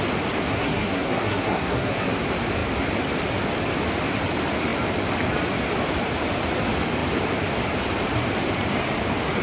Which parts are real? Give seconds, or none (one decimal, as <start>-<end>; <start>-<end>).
0.0-0.5; 2.2-9.4